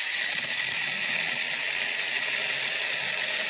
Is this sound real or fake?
real